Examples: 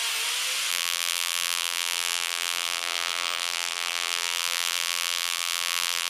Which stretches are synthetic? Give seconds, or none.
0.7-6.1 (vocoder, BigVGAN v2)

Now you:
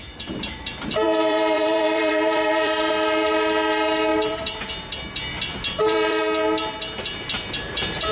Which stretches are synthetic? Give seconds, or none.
0.0-2.9 (vocoder, BigVGAN v2); 4.1-4.7; 5.3-6.2

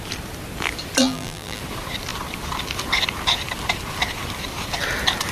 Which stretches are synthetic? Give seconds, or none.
1.0-1.6 (vocoder, BigVGAN v2)